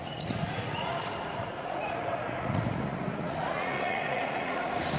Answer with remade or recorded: remade